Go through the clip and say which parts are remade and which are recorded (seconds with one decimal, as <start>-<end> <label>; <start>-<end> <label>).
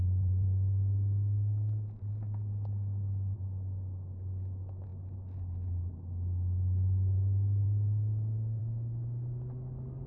0.0-10.1 recorded